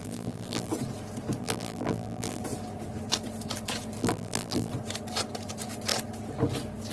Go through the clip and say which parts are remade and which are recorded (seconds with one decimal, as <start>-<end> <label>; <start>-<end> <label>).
0.0-0.7 remade; 0.7-1.4 recorded; 1.4-2.4 remade; 2.4-4.0 recorded; 4.0-4.7 remade; 4.7-6.9 recorded